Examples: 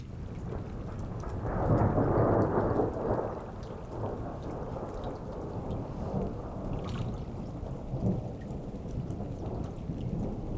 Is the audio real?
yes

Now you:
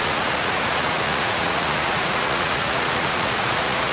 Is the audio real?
no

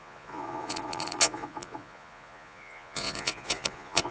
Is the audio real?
no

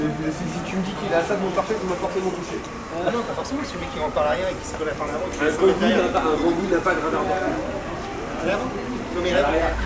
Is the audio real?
yes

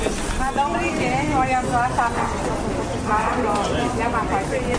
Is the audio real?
yes